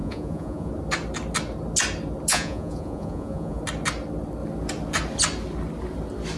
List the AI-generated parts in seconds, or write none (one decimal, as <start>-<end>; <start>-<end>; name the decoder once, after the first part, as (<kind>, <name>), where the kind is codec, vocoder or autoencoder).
0.0-0.7 (vocoder, Vocos); 2.3-3.6